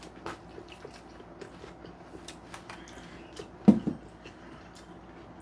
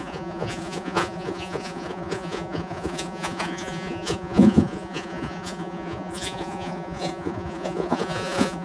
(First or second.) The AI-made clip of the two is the second